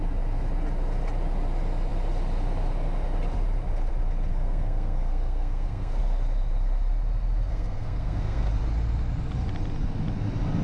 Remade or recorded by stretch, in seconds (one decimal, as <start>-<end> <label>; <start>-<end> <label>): 0.0-4.3 recorded; 4.3-6.0 remade; 6.0-7.5 recorded; 7.5-8.5 remade; 8.5-10.6 recorded